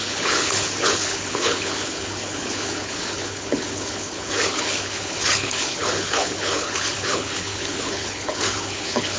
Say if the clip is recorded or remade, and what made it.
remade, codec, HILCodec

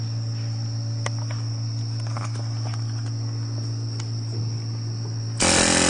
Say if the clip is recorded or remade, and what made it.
recorded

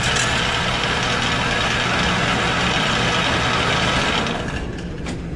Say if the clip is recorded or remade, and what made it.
recorded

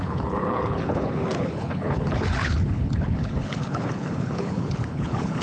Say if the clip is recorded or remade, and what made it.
remade, codec, HILCodec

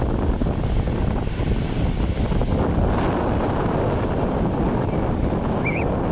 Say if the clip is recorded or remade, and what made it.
recorded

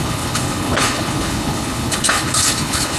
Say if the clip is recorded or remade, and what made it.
remade, codec, HILCodec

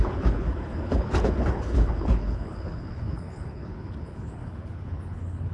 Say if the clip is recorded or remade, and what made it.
remade, codec, HILCodec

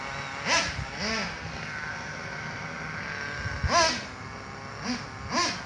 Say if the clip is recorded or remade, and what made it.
recorded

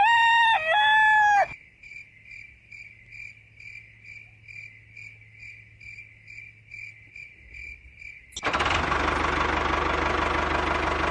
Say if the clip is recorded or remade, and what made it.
recorded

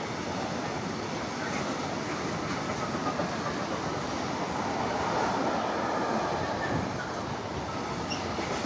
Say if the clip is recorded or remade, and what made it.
recorded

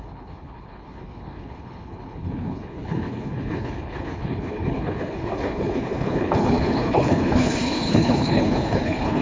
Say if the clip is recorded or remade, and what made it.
remade, codec, HILCodec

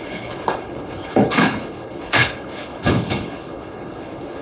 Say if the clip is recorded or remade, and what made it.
remade, codec, HILCodec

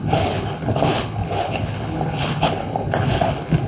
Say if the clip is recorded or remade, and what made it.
remade, codec, HILCodec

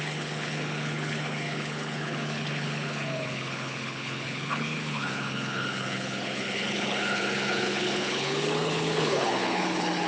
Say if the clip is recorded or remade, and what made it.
remade, codec, HILCodec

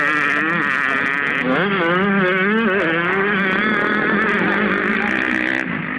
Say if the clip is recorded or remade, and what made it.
recorded